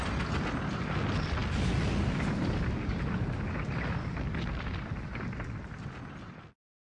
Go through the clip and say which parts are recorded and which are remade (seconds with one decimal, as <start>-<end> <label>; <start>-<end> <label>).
0.0-6.9 recorded